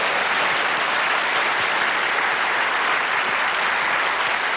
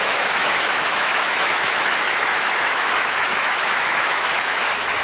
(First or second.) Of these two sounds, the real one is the first